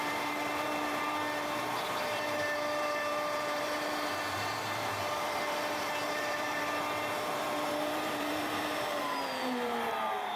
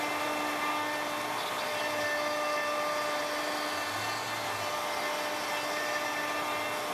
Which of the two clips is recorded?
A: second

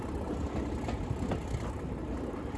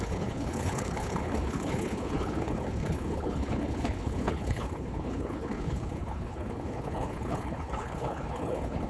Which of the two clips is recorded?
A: first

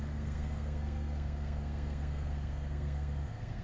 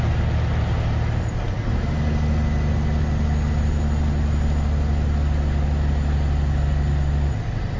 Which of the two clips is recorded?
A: second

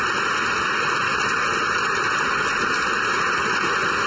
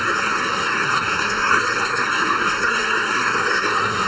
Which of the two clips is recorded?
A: first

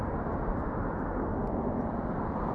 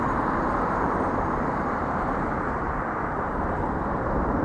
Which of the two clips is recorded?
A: first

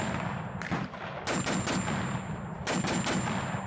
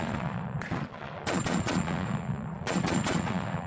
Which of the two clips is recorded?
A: first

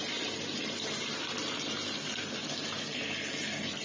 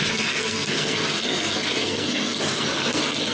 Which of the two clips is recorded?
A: first